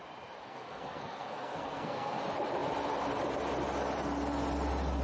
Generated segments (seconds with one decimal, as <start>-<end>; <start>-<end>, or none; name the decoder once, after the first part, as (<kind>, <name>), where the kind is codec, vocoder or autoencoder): 0.4-2.2 (codec, SNAC)